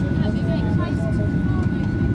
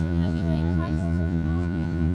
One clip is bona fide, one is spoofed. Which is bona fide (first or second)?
first